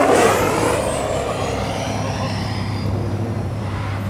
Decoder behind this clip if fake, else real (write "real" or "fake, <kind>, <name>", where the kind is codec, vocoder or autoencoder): fake, vocoder, BigVGAN v2